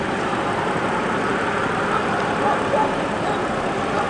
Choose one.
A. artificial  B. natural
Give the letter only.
A